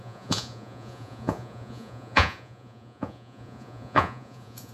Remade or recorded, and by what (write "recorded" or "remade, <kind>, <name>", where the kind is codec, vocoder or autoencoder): remade, vocoder, Vocos